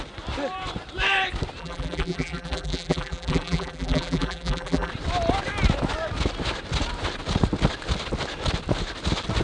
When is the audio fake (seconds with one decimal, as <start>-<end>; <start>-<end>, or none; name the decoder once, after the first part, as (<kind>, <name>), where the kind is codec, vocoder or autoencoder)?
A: 1.6-4.9 (vocoder, BigVGAN v2)